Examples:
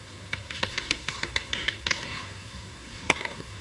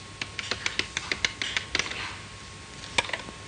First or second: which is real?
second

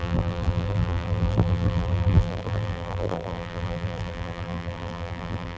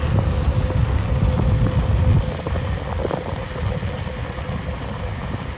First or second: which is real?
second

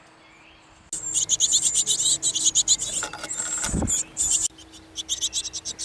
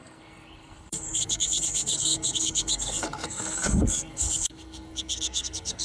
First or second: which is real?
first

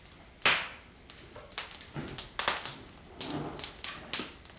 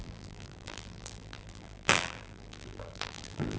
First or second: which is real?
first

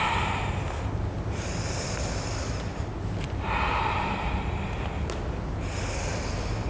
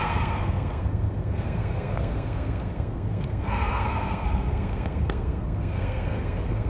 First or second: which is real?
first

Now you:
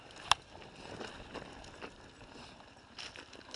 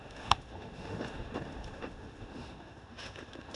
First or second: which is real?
first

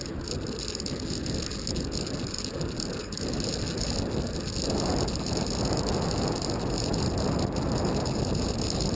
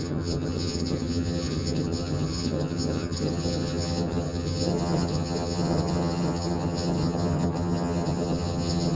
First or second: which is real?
first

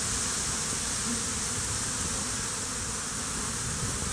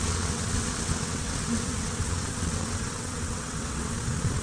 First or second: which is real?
first